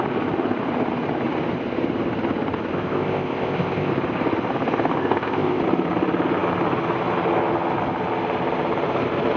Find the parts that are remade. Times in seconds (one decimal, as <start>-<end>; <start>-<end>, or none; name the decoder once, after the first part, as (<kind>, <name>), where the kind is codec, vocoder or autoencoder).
2.7-3.9 (codec, ZipCodec); 5.0-5.6